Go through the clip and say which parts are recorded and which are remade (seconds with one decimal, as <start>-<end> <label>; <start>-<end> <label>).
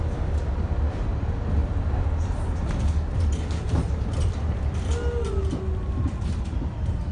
0.0-7.1 recorded